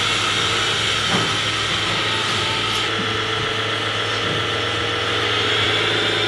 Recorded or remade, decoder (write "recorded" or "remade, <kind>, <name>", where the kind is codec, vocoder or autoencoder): recorded